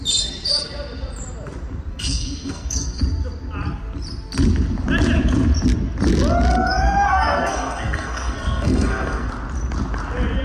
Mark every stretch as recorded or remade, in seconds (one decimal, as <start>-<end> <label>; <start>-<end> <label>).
0.0-1.9 recorded; 1.9-3.0 remade; 3.0-6.5 recorded; 6.5-9.3 remade; 9.3-10.4 recorded